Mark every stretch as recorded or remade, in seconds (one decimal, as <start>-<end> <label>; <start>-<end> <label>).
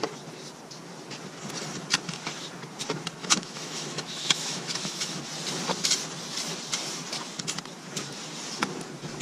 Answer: 0.0-3.2 recorded; 3.2-5.2 remade; 5.2-9.2 recorded